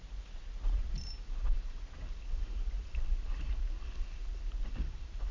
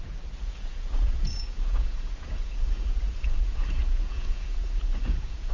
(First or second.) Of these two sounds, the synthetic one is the second